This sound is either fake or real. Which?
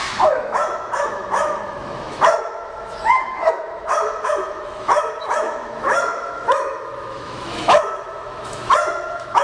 fake